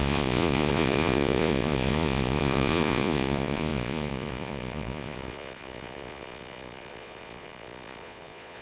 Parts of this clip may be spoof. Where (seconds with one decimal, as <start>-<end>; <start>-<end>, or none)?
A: 0.0-8.6